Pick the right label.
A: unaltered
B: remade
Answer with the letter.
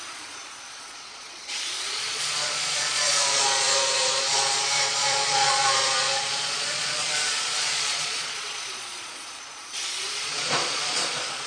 B